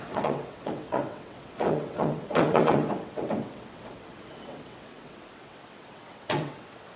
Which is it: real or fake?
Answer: fake